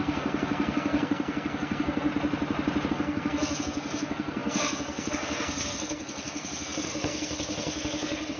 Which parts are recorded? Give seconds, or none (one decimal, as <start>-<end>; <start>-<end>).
2.1-2.9